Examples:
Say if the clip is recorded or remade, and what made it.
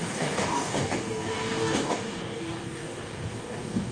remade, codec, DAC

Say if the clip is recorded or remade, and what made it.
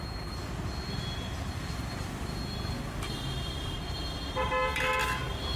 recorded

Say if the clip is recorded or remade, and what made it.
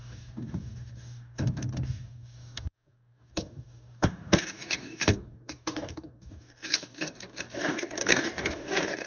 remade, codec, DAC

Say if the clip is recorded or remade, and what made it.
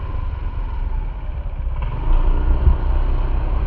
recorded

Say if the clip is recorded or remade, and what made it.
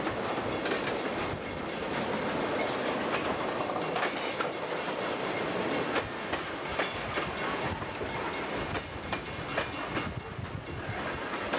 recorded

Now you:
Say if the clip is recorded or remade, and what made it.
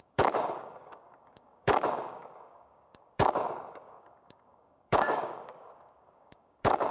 remade, codec, DAC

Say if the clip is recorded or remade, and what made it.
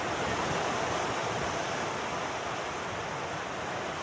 recorded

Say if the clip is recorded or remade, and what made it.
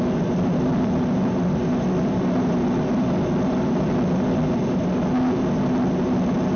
recorded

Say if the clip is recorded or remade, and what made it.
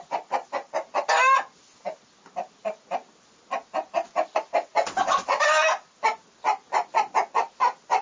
recorded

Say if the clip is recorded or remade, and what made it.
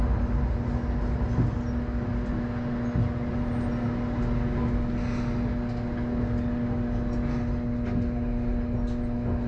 recorded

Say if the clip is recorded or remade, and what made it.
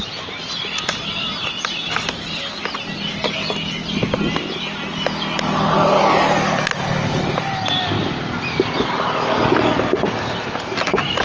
recorded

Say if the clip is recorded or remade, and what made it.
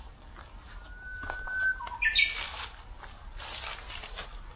recorded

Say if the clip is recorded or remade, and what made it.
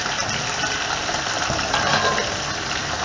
recorded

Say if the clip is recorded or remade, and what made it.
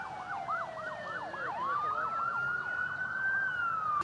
recorded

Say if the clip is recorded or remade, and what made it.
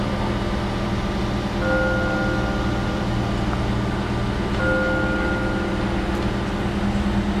recorded